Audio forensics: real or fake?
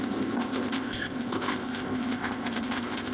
fake